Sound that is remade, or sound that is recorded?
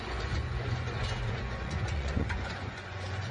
remade